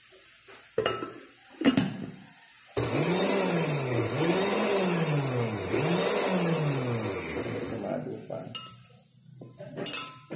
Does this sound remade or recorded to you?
recorded